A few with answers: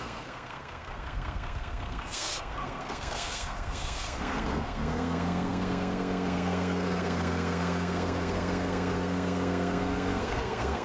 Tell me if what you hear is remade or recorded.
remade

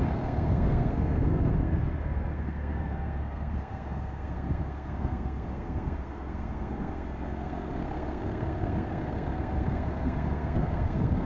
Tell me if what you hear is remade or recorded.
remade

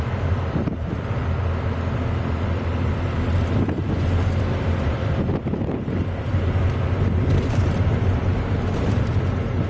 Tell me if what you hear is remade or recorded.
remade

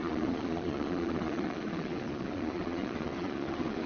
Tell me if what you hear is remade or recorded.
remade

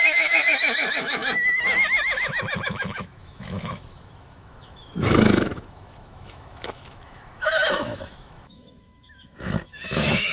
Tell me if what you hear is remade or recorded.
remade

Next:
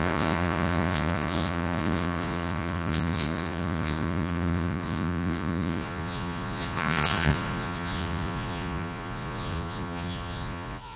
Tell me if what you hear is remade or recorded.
remade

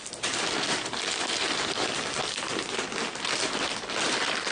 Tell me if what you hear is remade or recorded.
remade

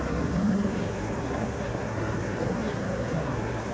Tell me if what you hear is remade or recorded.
remade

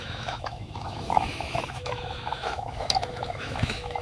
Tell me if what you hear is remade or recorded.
remade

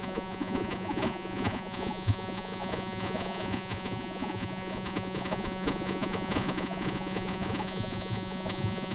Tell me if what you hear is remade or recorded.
remade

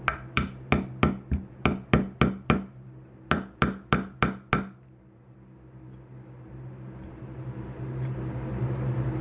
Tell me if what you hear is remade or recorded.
recorded